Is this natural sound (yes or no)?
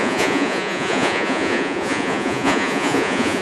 no